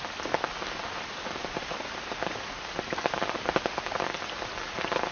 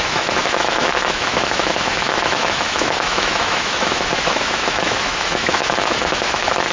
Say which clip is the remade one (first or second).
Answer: second